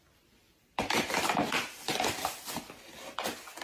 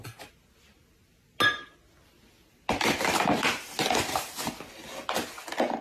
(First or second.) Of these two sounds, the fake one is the first